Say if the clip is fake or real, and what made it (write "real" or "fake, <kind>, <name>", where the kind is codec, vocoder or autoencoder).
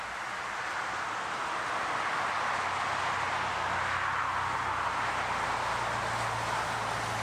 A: real